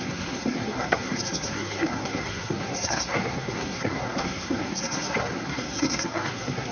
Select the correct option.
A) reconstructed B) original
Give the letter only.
A